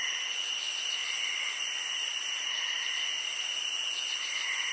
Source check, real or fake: real